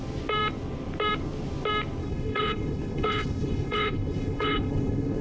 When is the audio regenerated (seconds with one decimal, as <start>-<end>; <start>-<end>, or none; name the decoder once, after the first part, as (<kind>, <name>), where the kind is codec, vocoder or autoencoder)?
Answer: 2.0-5.2 (codec, HILCodec)